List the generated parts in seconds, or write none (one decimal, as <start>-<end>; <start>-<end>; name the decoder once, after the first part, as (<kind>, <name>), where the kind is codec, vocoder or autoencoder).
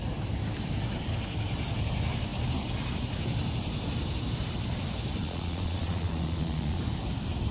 5.2-6.8 (vocoder, Vocos)